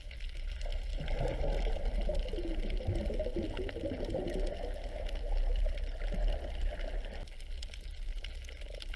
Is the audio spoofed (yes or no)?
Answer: no